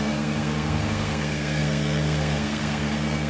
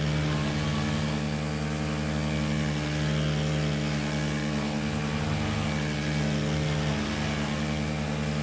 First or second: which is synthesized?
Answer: first